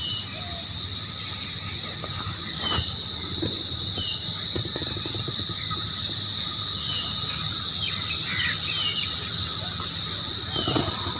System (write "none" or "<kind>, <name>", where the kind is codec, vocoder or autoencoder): none